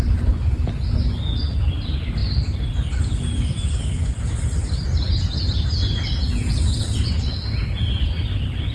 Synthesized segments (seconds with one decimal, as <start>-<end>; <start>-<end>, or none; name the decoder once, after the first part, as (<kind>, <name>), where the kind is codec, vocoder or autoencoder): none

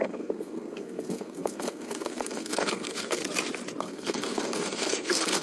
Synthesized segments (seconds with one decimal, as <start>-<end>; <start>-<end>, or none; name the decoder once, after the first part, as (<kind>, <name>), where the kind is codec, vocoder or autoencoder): 0.0-3.2 (codec, SNAC); 3.8-5.4

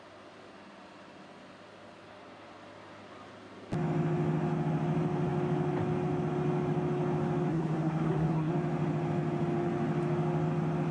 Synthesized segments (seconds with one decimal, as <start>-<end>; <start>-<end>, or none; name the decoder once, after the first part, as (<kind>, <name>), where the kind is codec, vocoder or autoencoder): 7.5-8.5 (codec, SNAC)